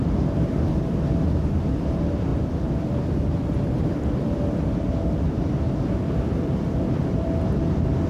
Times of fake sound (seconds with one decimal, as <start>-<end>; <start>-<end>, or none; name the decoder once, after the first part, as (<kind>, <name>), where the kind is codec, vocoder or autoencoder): 0.0-8.1 (vocoder, BigVGAN v2)